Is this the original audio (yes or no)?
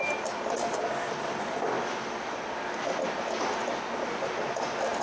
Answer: yes